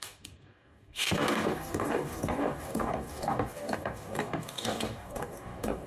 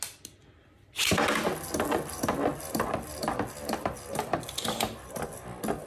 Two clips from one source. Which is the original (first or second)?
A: second